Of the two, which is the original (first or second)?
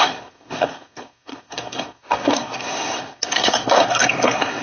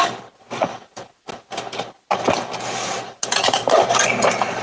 second